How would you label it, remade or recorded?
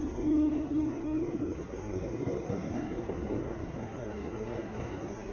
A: remade